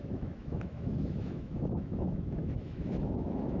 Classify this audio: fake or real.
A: fake